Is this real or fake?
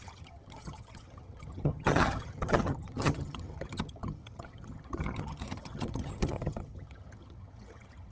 fake